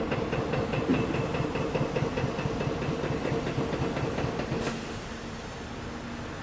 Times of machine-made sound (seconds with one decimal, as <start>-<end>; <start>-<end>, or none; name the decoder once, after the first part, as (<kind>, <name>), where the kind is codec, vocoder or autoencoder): none